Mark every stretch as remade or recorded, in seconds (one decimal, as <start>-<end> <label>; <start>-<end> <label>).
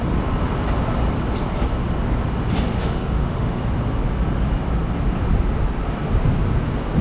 0.0-2.7 recorded; 2.7-3.6 remade; 3.6-7.0 recorded